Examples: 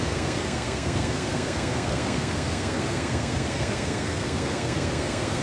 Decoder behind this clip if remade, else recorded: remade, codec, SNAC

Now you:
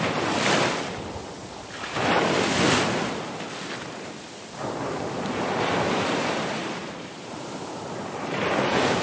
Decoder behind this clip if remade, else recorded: recorded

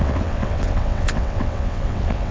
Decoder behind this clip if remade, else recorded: remade, vocoder, WaveNeXt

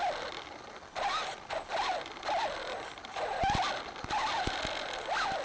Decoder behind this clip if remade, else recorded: recorded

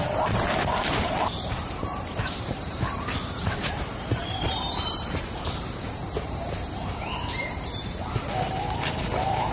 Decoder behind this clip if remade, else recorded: remade, vocoder, BigVGAN v2